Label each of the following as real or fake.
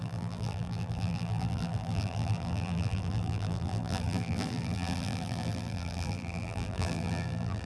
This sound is fake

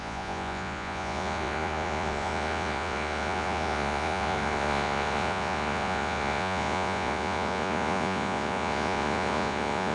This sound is fake